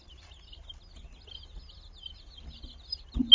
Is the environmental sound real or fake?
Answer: real